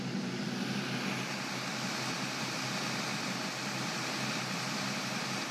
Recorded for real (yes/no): yes